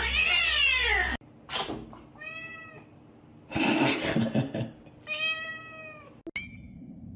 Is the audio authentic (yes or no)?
yes